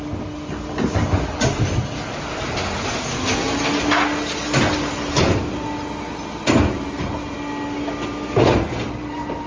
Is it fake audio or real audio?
real